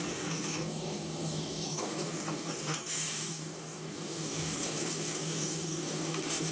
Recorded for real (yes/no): no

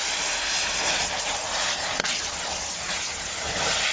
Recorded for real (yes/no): yes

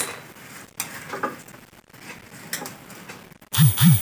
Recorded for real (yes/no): yes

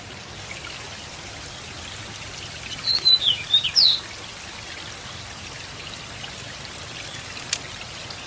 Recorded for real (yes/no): yes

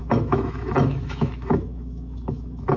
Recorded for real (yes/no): no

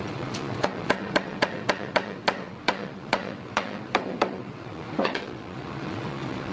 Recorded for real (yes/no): no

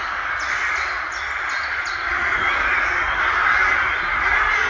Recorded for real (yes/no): no